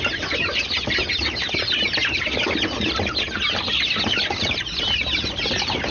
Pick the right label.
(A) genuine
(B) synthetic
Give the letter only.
A